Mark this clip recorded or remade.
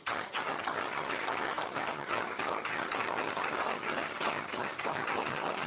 remade